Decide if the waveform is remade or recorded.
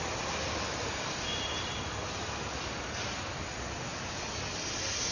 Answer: recorded